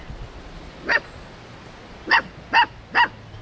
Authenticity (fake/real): real